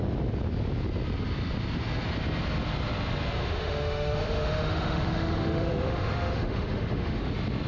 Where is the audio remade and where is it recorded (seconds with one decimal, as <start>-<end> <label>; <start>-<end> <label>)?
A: 0.0-3.4 recorded; 3.4-7.3 remade; 7.3-7.7 recorded